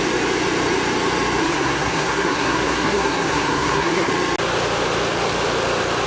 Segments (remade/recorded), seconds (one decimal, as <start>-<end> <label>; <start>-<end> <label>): 0.0-1.4 recorded; 1.4-4.1 remade; 4.1-6.1 recorded